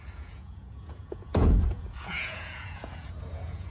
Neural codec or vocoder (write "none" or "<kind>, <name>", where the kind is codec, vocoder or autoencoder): vocoder, Vocos